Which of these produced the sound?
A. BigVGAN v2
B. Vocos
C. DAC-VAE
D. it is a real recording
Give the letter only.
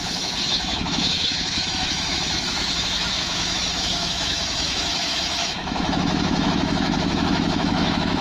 C